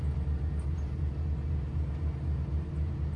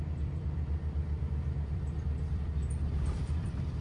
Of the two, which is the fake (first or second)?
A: second